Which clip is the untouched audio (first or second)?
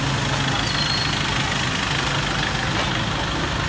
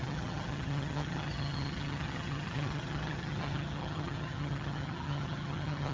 first